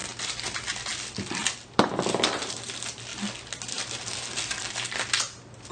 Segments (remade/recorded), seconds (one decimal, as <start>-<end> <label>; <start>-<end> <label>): 0.0-5.7 recorded